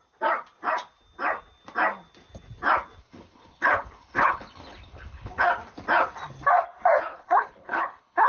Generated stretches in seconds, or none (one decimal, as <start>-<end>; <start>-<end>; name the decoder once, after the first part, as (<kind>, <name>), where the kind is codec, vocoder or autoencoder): 3.0-5.5 (codec, HILCodec); 7.1-8.3